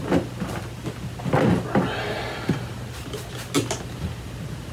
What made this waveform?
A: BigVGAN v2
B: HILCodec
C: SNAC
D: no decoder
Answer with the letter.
D